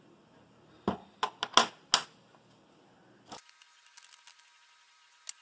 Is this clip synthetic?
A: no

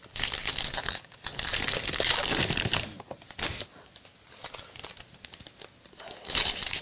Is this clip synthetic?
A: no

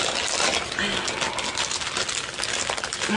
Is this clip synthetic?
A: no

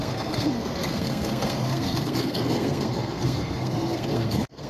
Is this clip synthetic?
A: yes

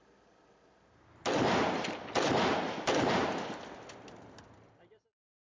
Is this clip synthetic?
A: no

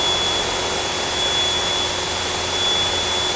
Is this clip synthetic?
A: no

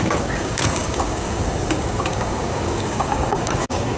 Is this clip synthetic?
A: yes